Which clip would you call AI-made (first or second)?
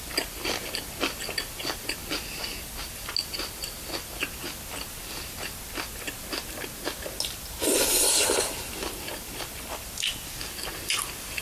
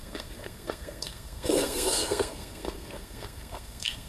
second